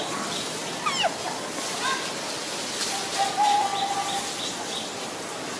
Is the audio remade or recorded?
recorded